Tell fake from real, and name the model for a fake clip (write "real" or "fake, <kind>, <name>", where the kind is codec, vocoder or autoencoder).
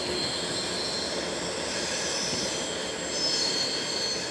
real